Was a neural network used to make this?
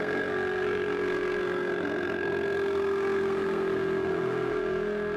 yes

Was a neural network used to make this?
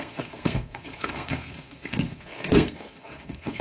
yes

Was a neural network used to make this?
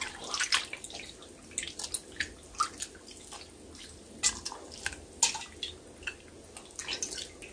no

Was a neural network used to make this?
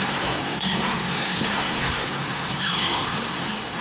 yes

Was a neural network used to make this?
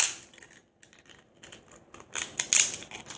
no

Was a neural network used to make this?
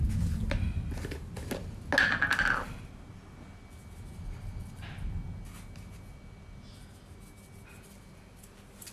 no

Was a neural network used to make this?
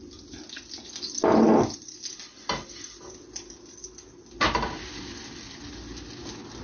no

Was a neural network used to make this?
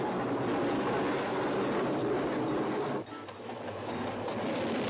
no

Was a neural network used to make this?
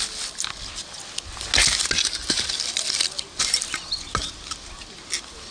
no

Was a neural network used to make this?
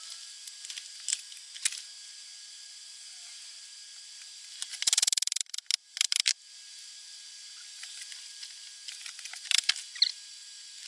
no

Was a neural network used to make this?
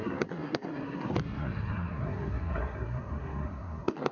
yes